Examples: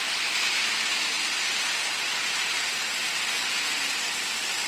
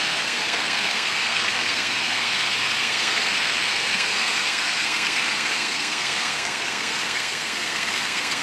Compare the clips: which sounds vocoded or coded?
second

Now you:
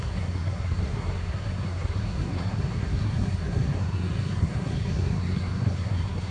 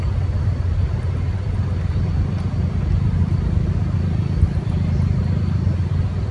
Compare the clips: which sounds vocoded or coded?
first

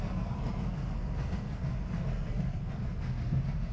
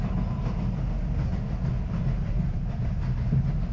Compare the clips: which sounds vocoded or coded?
first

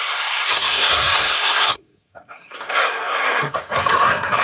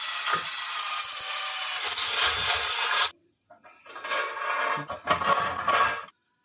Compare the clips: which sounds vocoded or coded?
first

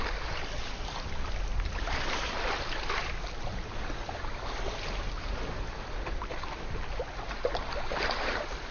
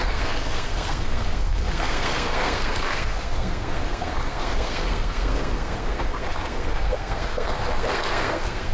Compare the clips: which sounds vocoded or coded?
second